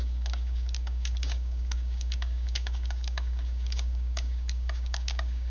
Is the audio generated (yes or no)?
yes